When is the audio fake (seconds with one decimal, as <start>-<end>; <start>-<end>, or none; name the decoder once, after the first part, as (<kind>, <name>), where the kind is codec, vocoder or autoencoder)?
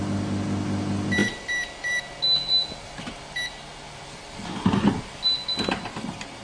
1.2-2.0 (vocoder, BigVGAN v2)